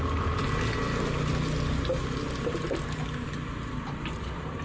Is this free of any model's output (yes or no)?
yes